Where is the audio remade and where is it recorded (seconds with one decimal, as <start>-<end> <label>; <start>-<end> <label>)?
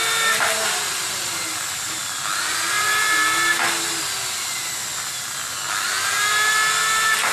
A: 0.0-7.3 recorded